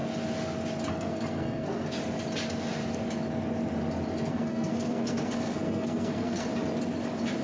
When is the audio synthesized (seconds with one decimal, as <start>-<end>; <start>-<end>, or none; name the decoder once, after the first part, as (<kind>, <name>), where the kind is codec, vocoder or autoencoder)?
0.9-2.0 (codec, SNAC); 4.3-6.5